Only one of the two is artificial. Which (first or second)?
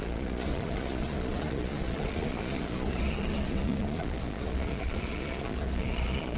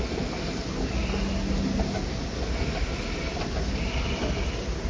first